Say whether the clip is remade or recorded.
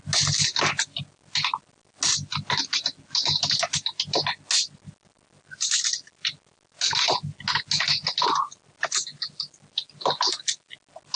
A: recorded